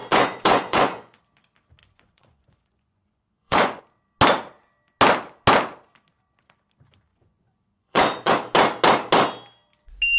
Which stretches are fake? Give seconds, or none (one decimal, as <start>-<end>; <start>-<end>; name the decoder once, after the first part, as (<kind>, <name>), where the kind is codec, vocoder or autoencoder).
0.0-1.2 (vocoder, Vocos); 1.8-3.8; 7.1-8.3